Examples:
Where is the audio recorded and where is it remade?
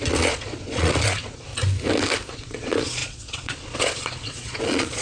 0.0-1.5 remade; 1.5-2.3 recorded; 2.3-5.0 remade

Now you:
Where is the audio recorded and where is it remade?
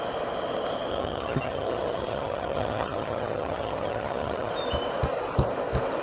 0.0-0.9 recorded; 0.9-4.5 remade; 4.5-6.0 recorded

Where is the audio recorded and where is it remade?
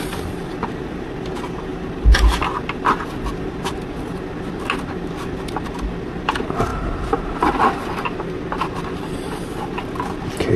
0.0-10.6 remade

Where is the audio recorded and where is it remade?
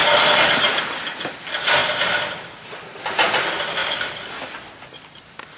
0.0-0.8 remade; 0.8-1.8 recorded; 1.8-2.8 remade; 2.8-3.8 recorded; 3.8-4.6 remade; 4.6-5.6 recorded